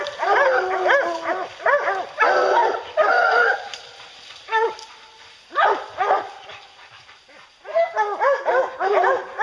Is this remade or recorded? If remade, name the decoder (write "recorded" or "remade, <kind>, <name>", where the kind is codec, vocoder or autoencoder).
recorded